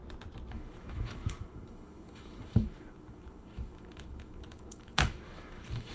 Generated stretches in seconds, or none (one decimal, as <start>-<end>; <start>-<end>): 0.5-5.9